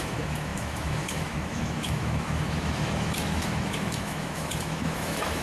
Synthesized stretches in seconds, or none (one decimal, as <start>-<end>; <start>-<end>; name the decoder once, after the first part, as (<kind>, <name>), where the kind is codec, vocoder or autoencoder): 0.0-5.4 (autoencoder, DAC-VAE)